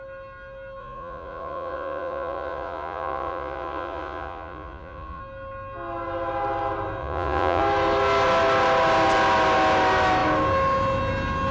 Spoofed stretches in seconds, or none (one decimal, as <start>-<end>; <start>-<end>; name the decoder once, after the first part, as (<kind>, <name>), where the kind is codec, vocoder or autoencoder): 0.8-5.2 (vocoder, Vocos); 7.0-7.6